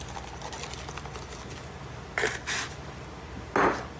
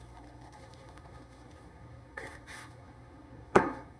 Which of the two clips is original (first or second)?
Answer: first